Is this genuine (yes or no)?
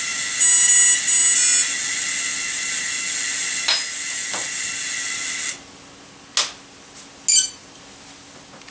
yes